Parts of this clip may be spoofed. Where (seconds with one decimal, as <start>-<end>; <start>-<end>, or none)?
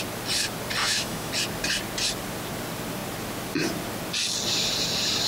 0.8-1.3